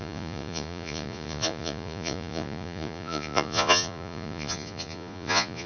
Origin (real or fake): fake